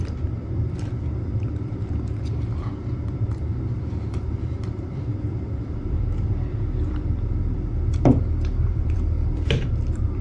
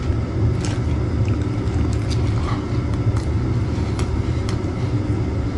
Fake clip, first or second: first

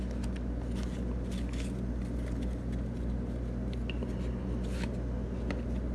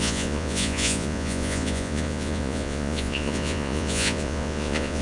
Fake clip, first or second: second